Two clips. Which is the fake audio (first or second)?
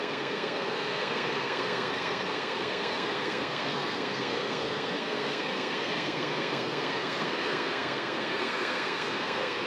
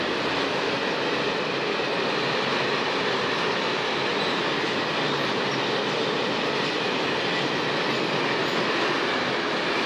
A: first